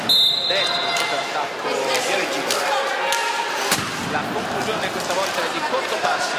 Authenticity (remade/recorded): recorded